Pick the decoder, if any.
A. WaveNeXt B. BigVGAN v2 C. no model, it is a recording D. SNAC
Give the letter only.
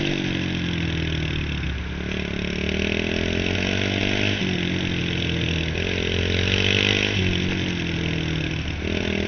C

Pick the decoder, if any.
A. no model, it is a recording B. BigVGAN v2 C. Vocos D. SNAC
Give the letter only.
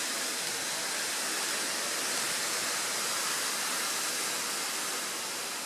A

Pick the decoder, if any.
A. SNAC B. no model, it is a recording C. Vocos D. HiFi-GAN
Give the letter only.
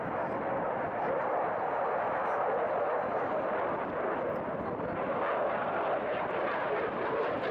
B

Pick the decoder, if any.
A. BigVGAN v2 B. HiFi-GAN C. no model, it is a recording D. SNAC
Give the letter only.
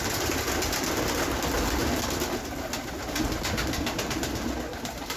C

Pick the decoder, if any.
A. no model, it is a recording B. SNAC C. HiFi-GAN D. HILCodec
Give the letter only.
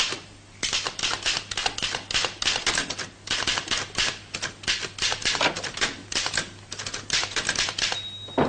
A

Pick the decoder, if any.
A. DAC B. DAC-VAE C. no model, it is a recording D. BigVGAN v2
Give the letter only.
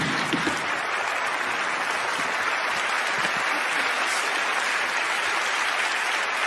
C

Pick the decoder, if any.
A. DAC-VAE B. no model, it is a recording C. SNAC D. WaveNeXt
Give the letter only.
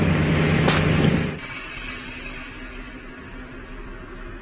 B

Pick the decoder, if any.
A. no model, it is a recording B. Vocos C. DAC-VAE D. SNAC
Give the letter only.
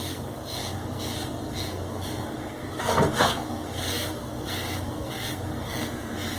D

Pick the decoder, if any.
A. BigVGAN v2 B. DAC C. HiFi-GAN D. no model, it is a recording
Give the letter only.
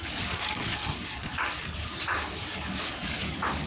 B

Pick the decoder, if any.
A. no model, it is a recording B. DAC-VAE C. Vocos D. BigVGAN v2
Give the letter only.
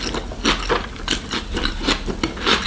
A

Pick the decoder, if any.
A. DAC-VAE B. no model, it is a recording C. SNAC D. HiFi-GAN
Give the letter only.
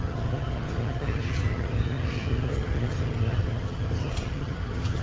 D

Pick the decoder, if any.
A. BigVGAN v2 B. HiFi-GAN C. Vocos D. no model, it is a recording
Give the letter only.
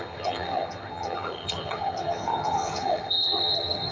B